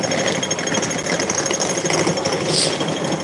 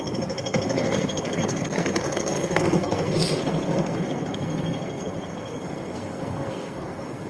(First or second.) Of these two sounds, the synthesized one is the second